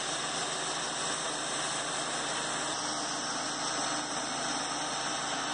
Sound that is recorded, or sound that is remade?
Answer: recorded